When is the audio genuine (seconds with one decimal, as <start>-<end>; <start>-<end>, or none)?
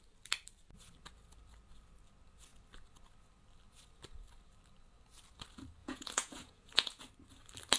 0.0-5.8; 7.0-7.8